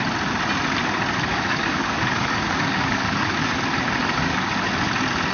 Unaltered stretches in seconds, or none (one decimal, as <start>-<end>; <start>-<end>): 0.0-1.3; 3.5-4.0; 4.6-5.3